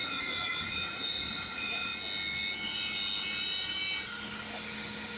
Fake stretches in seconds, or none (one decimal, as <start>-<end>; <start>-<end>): 0.0-1.9